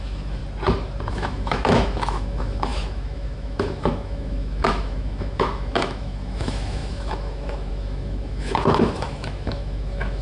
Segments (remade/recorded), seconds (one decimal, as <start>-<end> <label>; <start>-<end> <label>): 0.0-0.4 remade; 0.4-1.1 recorded; 1.1-10.2 remade